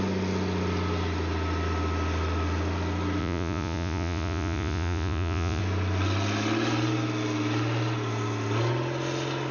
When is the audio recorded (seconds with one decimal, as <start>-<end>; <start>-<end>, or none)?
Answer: 0.0-3.2; 5.6-9.5